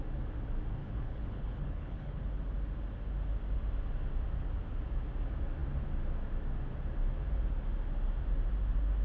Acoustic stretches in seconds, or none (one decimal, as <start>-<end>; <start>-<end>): 0.0-0.8; 2.2-9.0